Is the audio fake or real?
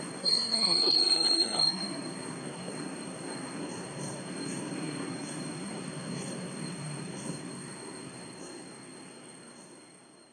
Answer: fake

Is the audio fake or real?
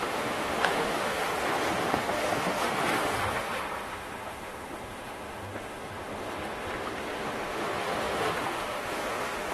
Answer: fake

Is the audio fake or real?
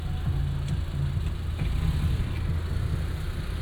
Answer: real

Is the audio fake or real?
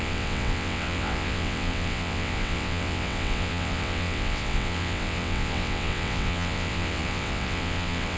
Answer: fake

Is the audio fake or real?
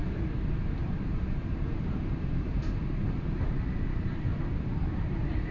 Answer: fake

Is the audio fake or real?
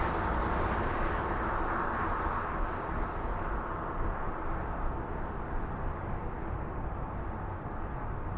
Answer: real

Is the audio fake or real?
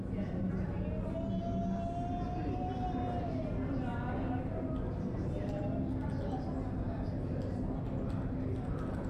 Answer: real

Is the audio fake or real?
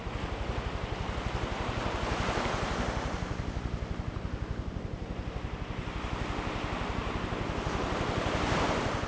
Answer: real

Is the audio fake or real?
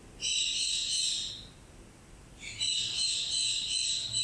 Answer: real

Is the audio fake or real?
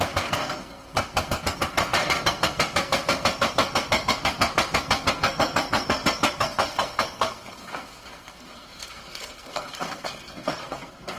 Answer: fake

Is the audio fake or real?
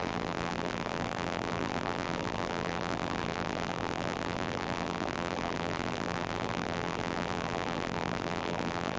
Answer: fake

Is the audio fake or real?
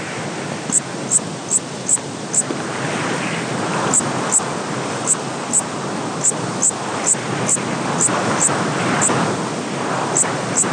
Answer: real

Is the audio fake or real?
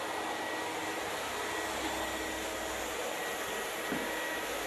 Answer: real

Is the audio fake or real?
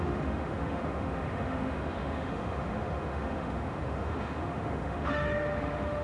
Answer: fake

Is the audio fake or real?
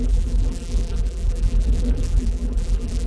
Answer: fake